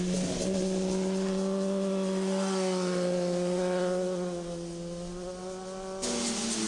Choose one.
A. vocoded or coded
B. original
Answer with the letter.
B